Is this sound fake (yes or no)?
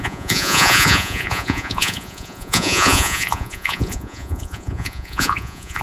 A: yes